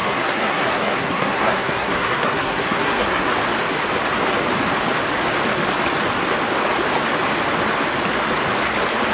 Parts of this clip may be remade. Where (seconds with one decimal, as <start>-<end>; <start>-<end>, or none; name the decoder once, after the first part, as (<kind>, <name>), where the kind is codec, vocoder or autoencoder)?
0.0-3.3 (codec, SNAC)